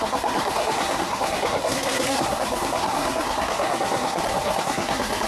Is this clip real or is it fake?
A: fake